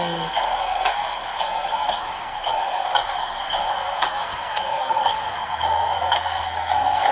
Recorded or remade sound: remade